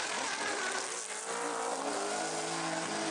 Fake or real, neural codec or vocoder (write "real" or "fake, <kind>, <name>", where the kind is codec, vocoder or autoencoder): real